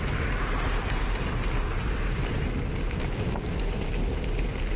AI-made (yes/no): yes